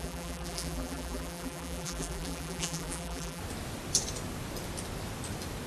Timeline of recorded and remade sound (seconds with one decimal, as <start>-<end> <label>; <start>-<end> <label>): 0.0-3.4 remade; 3.4-5.7 recorded